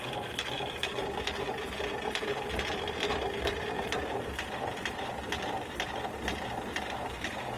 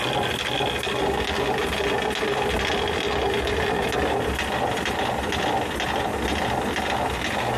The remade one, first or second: first